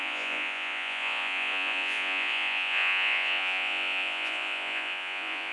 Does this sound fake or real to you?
fake